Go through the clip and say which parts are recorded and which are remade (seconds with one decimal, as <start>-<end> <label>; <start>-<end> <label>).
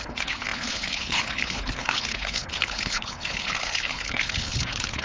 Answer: 0.0-5.0 remade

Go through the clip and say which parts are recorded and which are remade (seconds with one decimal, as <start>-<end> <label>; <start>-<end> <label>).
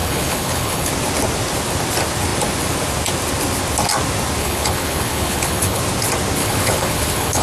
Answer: 0.0-0.9 remade; 0.9-4.4 recorded; 4.4-5.8 remade; 5.8-6.4 recorded; 6.4-7.4 remade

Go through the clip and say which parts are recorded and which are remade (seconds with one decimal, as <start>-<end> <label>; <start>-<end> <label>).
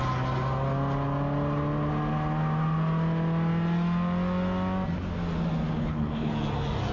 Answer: 0.0-5.8 recorded; 5.8-6.3 remade; 6.3-6.9 recorded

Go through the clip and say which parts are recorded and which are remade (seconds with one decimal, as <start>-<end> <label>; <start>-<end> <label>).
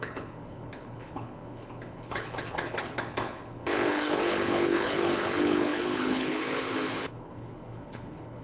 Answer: 0.0-8.4 remade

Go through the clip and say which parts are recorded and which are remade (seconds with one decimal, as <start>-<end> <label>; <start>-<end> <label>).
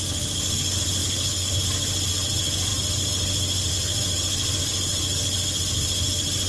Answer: 0.0-1.0 recorded; 1.0-1.6 remade; 1.6-6.5 recorded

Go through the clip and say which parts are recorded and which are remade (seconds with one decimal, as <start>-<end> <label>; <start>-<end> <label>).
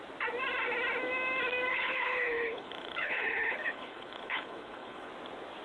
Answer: 0.0-1.7 recorded; 1.7-5.1 remade; 5.1-5.6 recorded